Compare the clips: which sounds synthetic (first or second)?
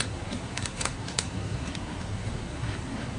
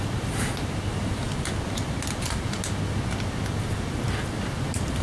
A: first